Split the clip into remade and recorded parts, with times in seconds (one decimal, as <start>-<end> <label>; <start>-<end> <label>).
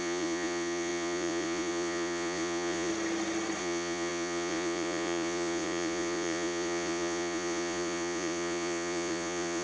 0.0-2.9 remade; 2.9-3.6 recorded; 3.6-9.6 remade